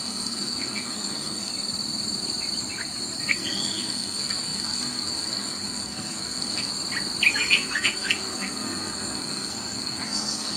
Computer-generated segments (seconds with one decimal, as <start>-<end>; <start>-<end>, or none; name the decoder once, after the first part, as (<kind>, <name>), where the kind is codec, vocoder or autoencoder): 0.0-1.5 (codec, SNAC); 3.2-6.7; 7.3-10.6